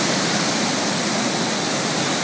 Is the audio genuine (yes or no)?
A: yes